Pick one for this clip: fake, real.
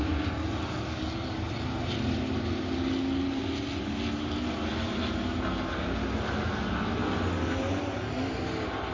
real